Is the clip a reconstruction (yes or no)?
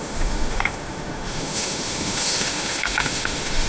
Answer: yes